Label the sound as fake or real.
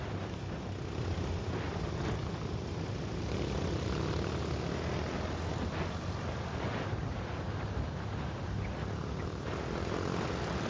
real